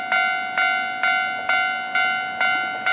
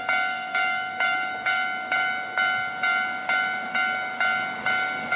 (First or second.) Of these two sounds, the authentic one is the first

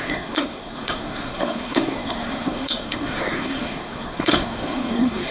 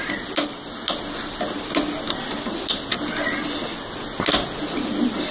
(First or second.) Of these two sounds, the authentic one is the second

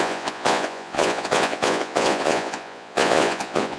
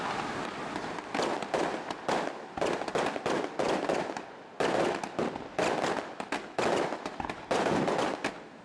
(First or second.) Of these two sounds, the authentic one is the second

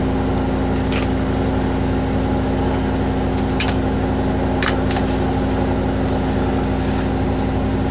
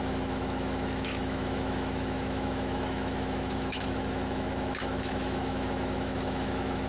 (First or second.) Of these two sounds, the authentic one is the first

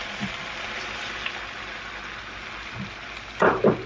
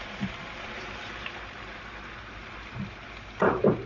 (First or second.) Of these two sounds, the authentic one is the first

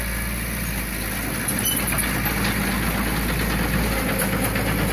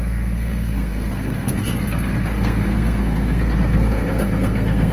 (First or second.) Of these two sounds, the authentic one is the first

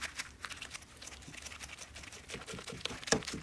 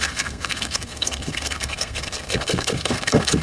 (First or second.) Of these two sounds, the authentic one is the first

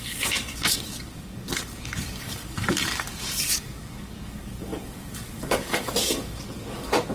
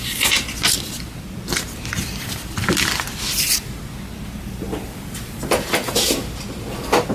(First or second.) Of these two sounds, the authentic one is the second